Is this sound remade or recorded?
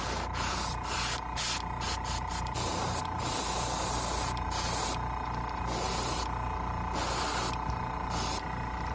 recorded